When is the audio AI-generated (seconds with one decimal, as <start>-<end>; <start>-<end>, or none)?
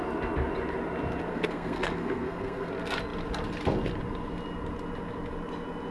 1.3-2.7